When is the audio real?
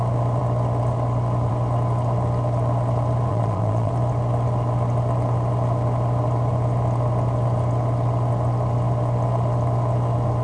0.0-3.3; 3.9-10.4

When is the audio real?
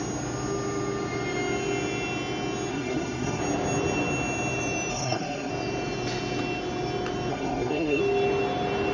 0.0-2.7; 3.4-4.9; 5.5-7.3; 8.0-8.9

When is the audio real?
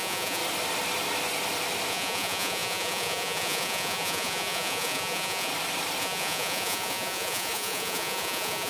0.4-1.9; 5.5-6.0